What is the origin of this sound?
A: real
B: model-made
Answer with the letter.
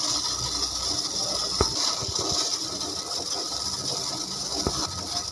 A